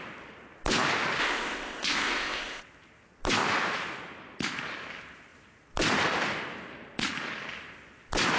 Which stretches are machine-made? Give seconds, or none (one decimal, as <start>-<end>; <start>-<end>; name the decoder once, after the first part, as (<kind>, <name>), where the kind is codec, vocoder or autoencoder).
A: 1.2-2.6 (codec, ZipCodec)